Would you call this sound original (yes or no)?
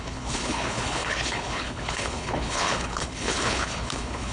no